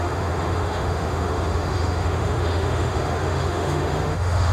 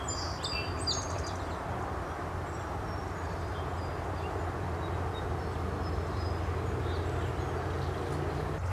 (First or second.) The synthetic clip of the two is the first